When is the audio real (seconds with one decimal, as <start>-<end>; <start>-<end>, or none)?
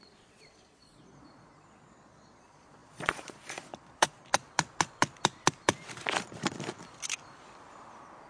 4.3-8.3